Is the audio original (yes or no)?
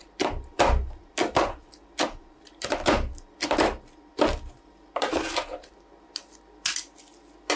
yes